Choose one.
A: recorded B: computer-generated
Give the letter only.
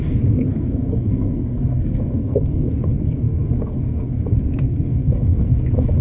B